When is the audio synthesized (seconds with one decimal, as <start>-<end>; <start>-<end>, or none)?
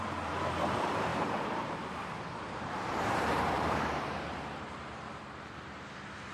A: 0.0-6.3